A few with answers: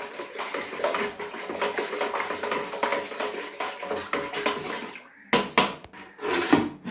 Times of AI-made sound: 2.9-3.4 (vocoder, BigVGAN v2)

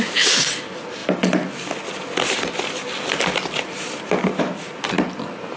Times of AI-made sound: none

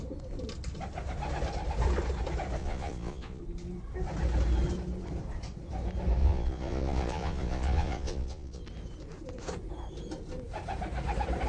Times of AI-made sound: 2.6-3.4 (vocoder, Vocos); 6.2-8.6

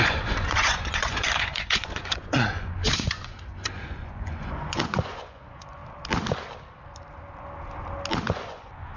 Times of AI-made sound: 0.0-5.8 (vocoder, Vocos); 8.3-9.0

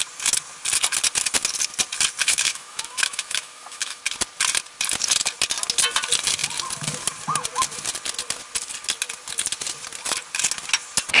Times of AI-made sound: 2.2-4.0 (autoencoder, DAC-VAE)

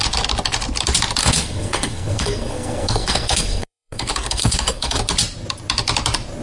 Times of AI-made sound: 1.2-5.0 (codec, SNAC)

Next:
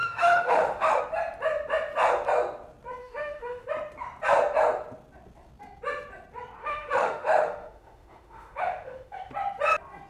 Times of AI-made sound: 0.0-1.0 (autoencoder, DAC-VAE); 3.0-3.7; 6.6-9.3